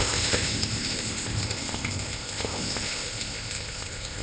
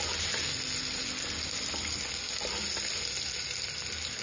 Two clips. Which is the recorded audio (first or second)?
second